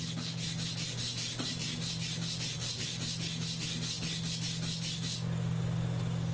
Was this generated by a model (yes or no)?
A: no